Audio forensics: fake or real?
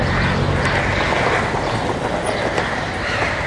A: real